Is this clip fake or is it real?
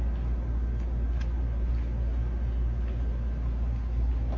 real